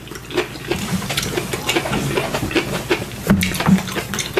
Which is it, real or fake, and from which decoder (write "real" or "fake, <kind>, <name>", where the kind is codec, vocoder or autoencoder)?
real